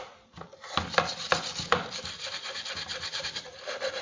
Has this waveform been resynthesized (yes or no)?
no